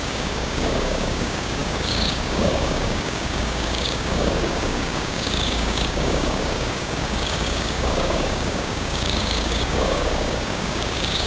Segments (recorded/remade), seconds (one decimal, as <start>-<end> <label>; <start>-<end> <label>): 0.0-11.3 remade

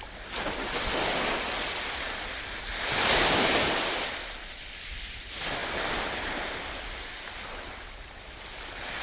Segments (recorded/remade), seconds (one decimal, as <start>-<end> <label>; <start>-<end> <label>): 0.0-2.7 recorded; 2.7-3.8 remade; 3.8-9.0 recorded

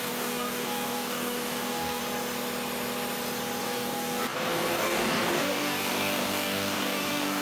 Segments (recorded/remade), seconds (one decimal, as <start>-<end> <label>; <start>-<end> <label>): 0.0-2.0 remade; 2.0-3.6 recorded; 3.6-7.4 remade

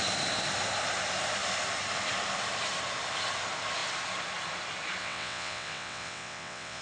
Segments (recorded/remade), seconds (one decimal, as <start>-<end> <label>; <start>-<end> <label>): 0.0-5.0 recorded; 5.0-6.8 remade